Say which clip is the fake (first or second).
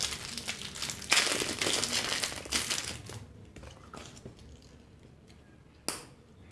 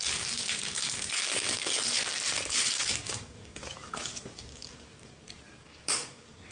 second